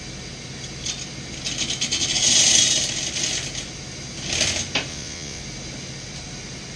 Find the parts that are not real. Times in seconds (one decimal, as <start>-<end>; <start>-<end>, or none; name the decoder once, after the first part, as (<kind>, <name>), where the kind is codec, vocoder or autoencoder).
4.9-5.4 (vocoder, WaveNeXt)

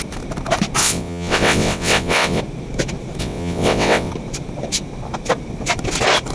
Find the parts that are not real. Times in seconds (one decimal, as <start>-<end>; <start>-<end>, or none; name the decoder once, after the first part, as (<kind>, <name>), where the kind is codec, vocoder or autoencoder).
0.8-2.4 (vocoder, WaveNeXt); 3.2-4.1

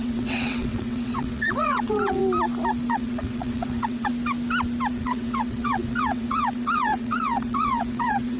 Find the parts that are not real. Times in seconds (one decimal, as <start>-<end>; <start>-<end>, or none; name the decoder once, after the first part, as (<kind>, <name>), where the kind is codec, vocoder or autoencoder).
0.0-2.2 (vocoder, WaveNeXt); 2.9-4.1; 4.9-8.4

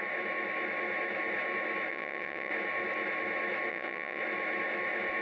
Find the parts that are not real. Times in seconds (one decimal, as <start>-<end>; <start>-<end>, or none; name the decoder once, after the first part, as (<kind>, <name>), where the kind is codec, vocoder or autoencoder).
1.9-2.5 (vocoder, WaveNeXt); 3.7-4.2

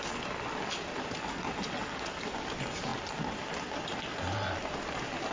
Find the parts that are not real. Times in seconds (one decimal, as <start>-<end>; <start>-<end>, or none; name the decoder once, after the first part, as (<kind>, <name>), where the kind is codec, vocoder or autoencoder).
none

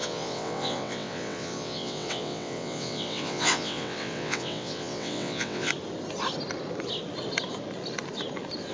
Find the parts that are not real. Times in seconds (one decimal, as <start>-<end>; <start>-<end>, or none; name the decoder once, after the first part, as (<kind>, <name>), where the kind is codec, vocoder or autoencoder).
0.0-5.7 (vocoder, WaveNeXt)